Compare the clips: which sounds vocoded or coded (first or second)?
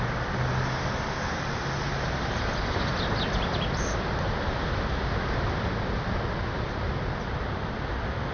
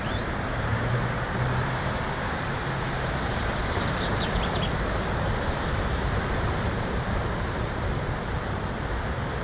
second